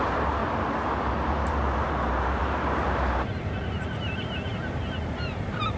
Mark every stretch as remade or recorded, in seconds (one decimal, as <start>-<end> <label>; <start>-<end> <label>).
0.0-0.4 remade; 0.4-1.1 recorded; 1.1-5.8 remade